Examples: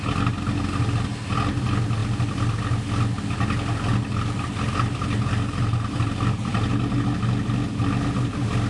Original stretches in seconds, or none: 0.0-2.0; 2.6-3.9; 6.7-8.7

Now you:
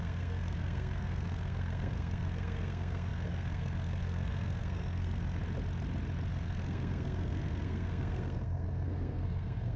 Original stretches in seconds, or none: 5.4-6.3

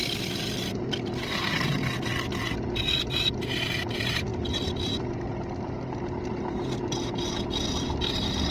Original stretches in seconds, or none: 2.9-4.3; 6.7-8.5

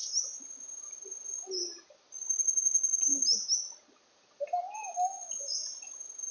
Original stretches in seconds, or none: 0.0-6.3

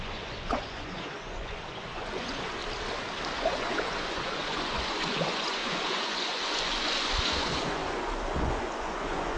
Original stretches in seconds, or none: 2.6-3.4

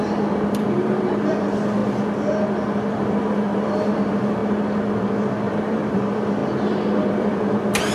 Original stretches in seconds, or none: 1.8-2.9; 4.4-5.5; 6.4-7.1

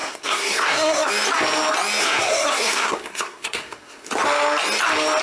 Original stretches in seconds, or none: 1.1-2.0; 4.1-5.2